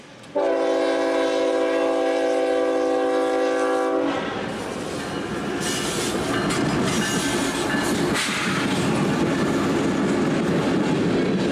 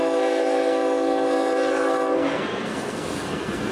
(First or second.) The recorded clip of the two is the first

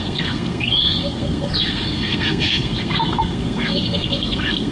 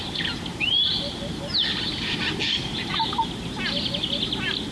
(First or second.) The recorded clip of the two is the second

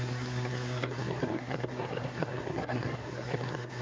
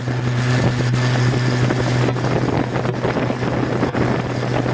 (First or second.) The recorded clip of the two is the second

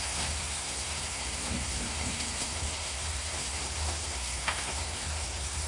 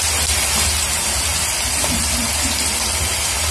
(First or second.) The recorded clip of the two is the second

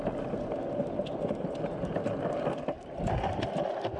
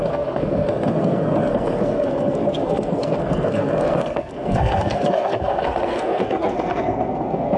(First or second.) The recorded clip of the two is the first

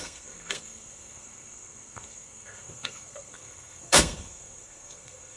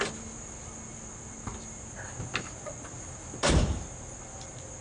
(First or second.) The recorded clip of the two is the second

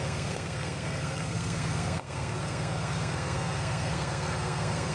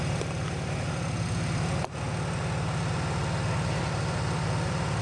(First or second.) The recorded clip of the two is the second